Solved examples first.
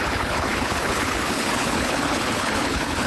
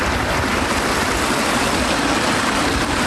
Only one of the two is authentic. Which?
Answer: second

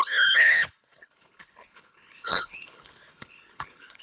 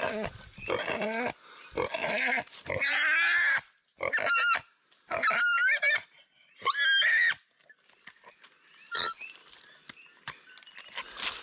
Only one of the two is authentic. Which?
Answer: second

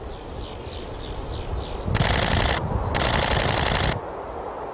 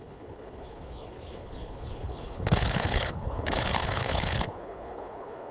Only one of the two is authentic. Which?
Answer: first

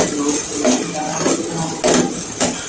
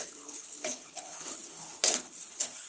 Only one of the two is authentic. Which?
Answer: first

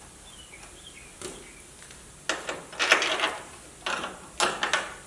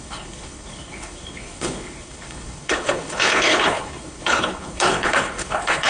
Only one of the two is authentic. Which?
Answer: first